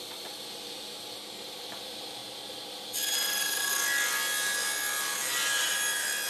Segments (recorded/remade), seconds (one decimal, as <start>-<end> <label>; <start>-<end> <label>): 0.0-2.2 remade; 2.2-5.7 recorded; 5.7-6.3 remade